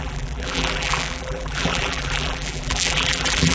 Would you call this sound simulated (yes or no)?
yes